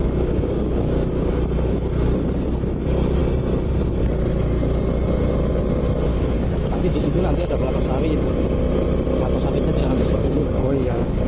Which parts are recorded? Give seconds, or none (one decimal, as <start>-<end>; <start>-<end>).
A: 1.3-6.1; 7.7-9.8